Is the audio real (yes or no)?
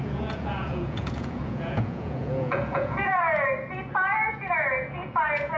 no